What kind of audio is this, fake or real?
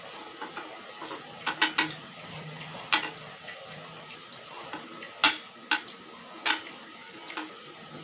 real